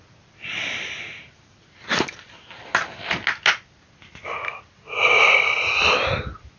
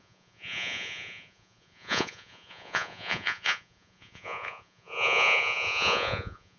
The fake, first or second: second